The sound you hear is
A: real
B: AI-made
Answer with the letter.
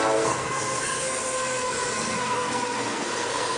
B